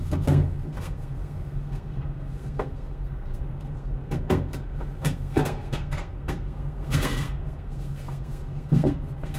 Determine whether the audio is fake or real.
fake